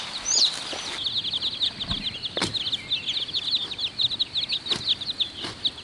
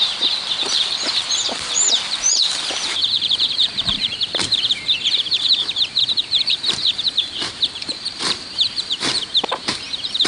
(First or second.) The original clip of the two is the first